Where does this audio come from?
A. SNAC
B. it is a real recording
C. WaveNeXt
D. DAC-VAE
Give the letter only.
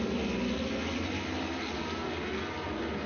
B